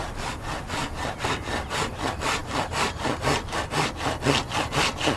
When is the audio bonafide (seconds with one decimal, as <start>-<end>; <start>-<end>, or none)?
0.0-5.2